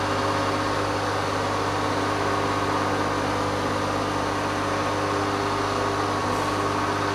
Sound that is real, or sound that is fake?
real